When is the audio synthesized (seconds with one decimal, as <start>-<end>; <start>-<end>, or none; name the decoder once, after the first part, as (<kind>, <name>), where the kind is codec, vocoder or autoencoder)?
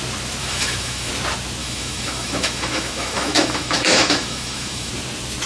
0.4-1.1 (autoencoder, DAC-VAE); 1.6-4.9